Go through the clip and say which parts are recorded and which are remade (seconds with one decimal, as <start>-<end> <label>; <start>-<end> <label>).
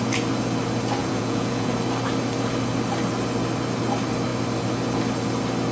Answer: 0.0-1.0 recorded; 1.0-1.7 remade; 1.7-5.7 recorded